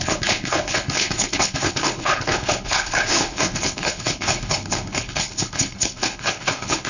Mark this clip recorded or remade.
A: remade